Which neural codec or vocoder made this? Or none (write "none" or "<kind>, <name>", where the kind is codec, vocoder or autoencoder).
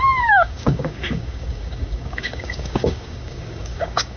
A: codec, DAC